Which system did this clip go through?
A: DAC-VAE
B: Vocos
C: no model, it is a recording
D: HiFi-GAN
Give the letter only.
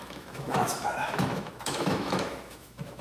A